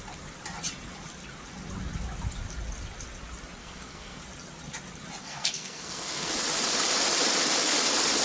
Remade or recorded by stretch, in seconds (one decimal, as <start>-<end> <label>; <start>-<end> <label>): 0.0-3.6 recorded; 3.6-4.2 remade; 4.2-5.2 recorded; 5.2-6.3 remade; 6.3-8.2 recorded